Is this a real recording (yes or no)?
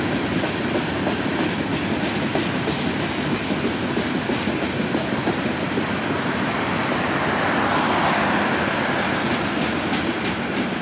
yes